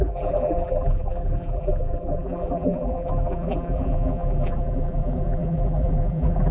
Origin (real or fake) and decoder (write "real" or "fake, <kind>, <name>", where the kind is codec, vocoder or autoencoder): fake, vocoder, BigVGAN v2